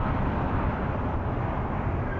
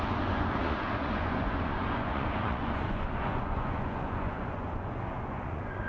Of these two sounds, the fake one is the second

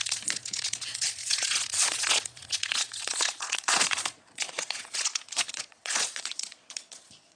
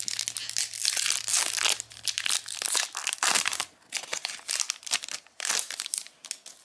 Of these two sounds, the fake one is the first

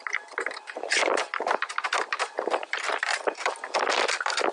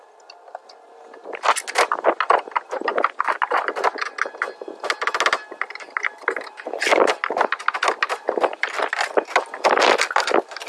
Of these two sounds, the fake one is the first